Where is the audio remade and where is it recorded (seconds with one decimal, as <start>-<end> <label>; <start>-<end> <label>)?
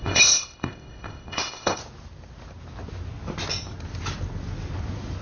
0.0-1.8 remade; 1.8-5.2 recorded